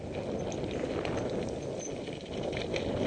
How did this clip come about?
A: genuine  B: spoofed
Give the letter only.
A